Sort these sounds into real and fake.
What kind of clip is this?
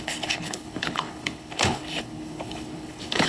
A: fake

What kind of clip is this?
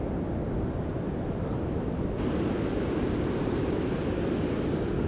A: real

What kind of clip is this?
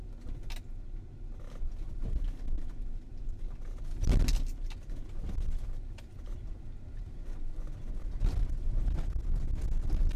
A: real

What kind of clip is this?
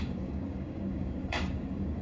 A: fake